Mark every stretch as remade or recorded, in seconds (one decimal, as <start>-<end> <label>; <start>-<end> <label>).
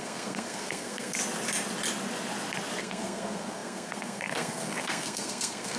0.0-1.2 remade; 1.2-2.8 recorded; 2.8-5.8 remade